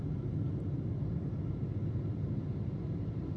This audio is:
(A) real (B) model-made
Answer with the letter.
A